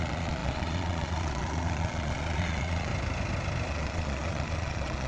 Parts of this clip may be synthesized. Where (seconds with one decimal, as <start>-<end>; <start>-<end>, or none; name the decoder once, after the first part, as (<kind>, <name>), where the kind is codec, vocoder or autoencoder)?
0.0-2.9 (vocoder, Vocos); 3.7-5.1